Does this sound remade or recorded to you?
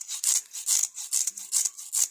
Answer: recorded